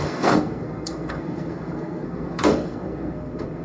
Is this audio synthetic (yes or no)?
yes